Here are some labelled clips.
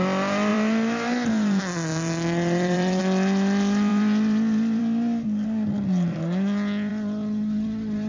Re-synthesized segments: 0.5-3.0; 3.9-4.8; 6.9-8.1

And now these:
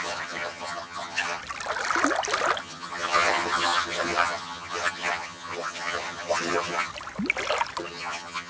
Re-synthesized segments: 0.0-1.4; 2.6-6.9; 7.8-8.5

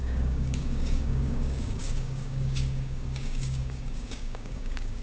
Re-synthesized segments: 0.0-5.0

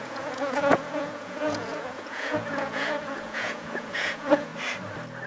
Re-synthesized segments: 0.0-4.5